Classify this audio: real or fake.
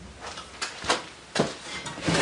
real